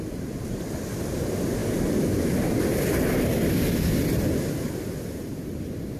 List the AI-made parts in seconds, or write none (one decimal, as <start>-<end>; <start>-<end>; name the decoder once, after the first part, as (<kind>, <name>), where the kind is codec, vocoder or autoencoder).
none